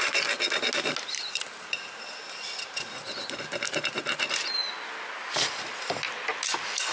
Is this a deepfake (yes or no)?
no